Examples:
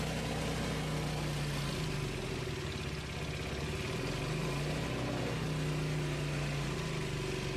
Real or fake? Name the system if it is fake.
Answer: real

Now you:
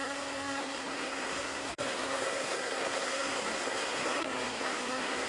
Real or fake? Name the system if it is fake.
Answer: fake, codec, SNAC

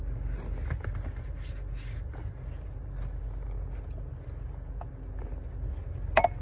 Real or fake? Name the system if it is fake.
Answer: real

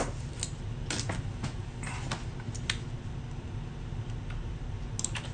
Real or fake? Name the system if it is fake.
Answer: real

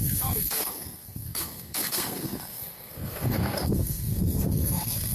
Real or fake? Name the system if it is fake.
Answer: fake, codec, SNAC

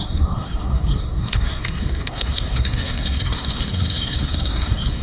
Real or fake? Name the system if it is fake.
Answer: fake, codec, SNAC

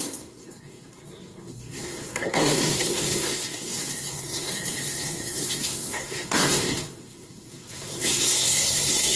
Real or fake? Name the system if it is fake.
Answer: fake, codec, SNAC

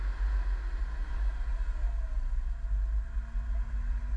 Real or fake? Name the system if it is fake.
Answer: real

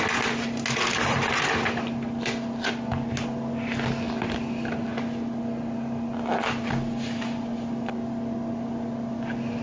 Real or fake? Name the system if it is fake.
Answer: real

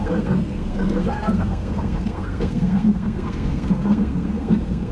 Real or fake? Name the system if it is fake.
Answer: fake, codec, SNAC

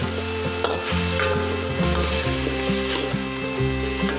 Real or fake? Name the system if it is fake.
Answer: real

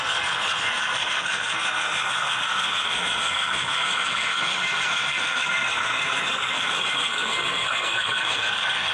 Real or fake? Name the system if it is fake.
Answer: fake, codec, SNAC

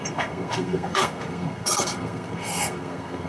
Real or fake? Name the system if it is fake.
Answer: fake, codec, SNAC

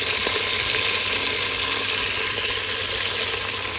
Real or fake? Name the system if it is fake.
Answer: real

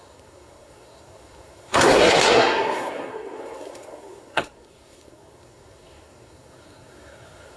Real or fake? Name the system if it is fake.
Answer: fake, codec, SNAC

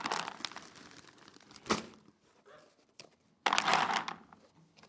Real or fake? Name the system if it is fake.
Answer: real